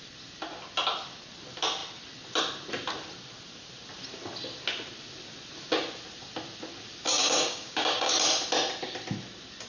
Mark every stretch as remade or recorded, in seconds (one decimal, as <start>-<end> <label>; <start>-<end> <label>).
0.0-7.2 recorded; 7.2-8.1 remade; 8.1-9.7 recorded

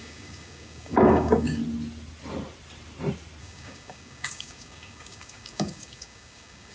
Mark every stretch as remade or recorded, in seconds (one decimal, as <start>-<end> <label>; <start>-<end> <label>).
0.0-1.6 remade; 1.6-3.4 recorded; 3.4-6.7 remade

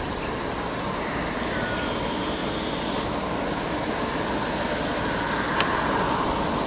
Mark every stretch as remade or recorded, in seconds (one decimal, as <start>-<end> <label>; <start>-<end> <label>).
0.0-6.7 recorded

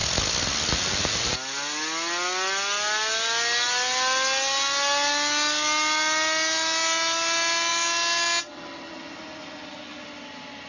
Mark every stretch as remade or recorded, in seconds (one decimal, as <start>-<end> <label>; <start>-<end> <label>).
0.0-10.7 recorded

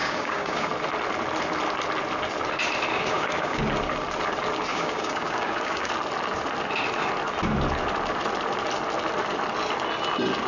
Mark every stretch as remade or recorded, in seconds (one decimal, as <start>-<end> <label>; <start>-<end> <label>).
0.0-0.7 remade; 0.7-2.9 recorded; 2.9-3.6 remade; 3.6-4.7 recorded; 4.7-5.9 remade; 5.9-10.5 recorded

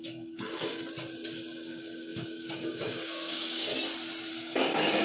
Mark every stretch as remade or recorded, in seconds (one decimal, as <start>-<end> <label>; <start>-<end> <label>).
0.0-0.8 remade; 0.8-1.7 recorded; 1.7-3.7 remade; 3.7-4.3 recorded; 4.3-5.0 remade

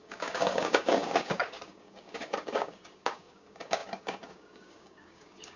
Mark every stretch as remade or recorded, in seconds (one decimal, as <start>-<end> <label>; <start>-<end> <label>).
0.0-5.6 remade